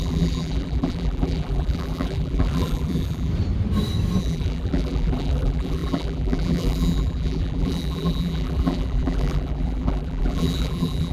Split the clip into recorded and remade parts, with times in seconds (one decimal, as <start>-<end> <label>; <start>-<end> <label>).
0.0-3.3 remade; 3.3-4.2 recorded; 4.2-11.1 remade